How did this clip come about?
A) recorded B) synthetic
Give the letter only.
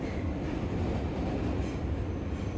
A